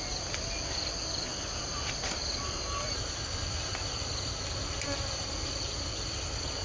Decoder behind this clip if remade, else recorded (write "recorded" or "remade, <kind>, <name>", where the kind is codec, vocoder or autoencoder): recorded